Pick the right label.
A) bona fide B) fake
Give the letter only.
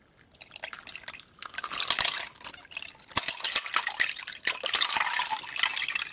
A